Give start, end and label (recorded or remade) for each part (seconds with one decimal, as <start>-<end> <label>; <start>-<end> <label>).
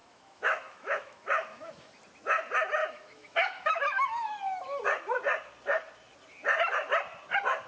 0.0-2.0 remade; 2.0-2.8 recorded; 2.8-4.3 remade; 4.3-7.7 recorded